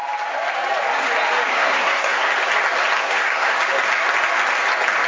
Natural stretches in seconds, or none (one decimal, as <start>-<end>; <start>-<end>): 0.0-1.5; 2.3-3.0; 3.6-5.1